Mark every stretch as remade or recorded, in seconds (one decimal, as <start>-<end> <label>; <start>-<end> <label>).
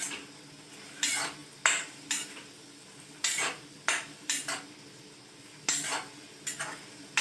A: 0.0-7.2 recorded